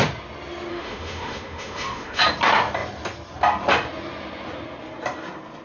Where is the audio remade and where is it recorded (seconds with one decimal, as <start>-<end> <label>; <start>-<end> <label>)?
0.0-0.7 recorded; 0.7-2.2 remade; 2.2-5.6 recorded